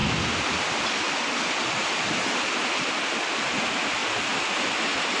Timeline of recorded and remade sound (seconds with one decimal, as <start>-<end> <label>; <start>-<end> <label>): 0.0-5.2 recorded